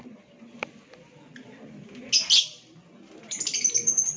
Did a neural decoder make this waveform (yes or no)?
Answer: no